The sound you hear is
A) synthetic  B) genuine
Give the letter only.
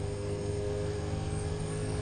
A